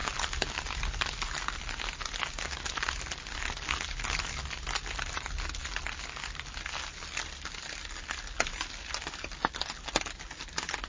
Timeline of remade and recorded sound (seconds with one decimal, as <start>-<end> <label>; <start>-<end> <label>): 0.0-10.9 recorded